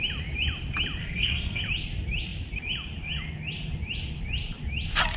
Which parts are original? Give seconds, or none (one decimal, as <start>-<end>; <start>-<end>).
0.0-1.0; 1.6-5.2